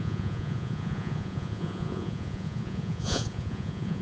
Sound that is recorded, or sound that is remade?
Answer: remade